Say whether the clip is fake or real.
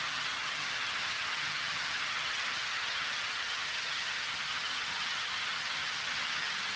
fake